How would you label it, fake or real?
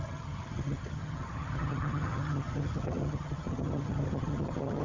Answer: fake